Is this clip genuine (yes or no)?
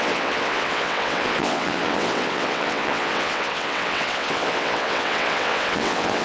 no